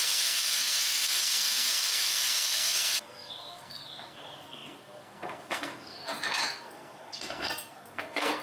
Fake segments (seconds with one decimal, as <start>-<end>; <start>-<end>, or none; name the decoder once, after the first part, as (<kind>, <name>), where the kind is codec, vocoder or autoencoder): 0.0-8.4 (codec, SNAC)